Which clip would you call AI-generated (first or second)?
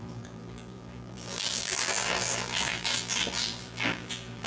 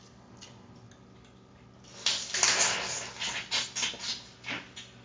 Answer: first